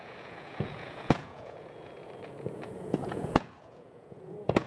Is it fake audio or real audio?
fake